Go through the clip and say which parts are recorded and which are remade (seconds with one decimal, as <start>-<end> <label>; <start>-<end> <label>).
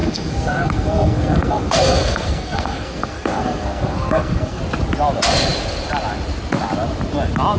0.0-4.6 remade; 4.6-7.6 recorded